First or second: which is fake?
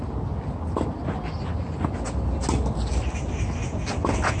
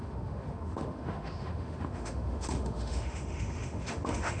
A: second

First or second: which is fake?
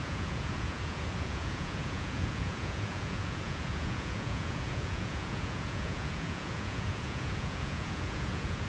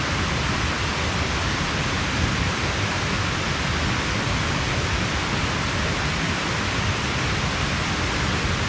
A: first